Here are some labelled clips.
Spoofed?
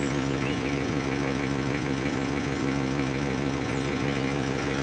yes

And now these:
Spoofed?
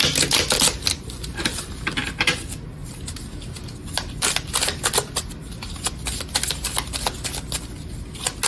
no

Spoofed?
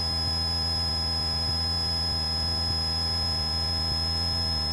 no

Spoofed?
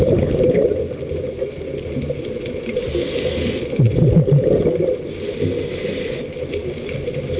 no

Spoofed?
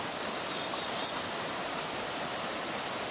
no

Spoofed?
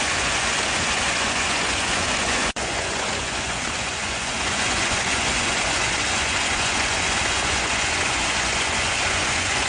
yes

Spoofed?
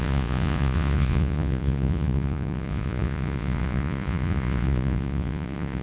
yes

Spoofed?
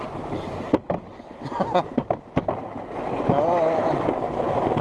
no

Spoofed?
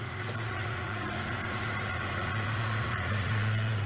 yes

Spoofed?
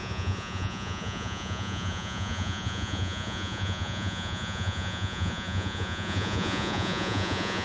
yes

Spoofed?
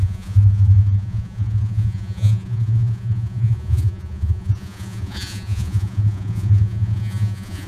yes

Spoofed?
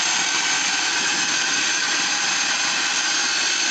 no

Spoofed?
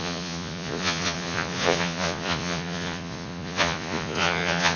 yes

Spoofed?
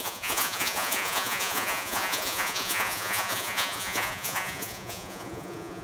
yes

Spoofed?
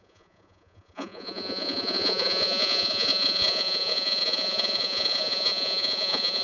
yes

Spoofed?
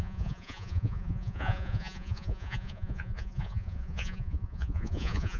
yes